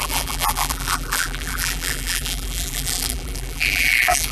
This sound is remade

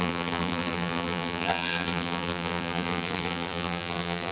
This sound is remade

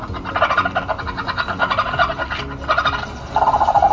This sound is recorded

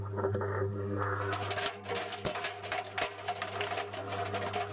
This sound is recorded